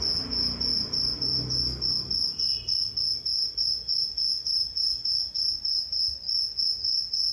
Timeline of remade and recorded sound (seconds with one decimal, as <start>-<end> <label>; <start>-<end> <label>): 0.0-3.3 recorded; 3.3-6.6 remade; 6.6-7.3 recorded